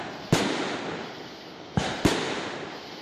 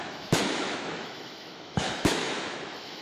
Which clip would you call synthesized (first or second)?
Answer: second